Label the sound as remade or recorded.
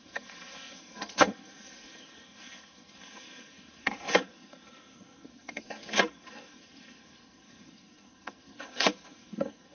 remade